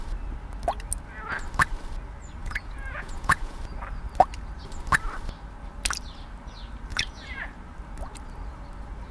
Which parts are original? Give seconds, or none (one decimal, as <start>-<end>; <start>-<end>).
0.0-2.4; 3.6-6.9; 7.5-9.1